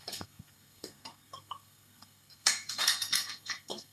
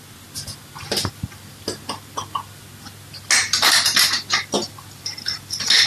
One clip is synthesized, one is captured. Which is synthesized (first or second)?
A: first